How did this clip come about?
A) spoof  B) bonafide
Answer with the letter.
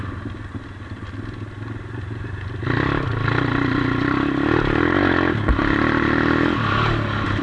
B